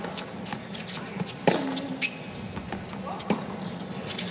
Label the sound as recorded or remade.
recorded